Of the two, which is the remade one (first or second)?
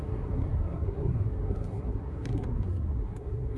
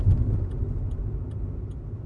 first